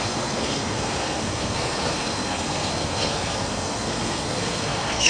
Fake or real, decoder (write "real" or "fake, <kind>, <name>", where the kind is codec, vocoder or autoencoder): fake, codec, SNAC